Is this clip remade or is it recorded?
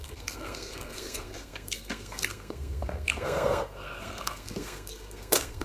remade